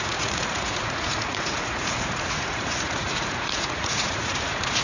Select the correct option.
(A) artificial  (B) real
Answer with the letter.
A